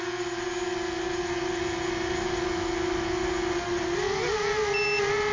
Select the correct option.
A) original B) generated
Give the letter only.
A